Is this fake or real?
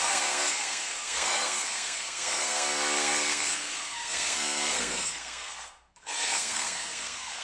fake